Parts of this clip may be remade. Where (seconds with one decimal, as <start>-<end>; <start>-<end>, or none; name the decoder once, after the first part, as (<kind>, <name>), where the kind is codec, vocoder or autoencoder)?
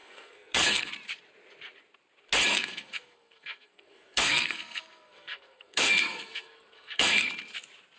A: 0.0-0.9 (codec, SNAC); 2.5-7.3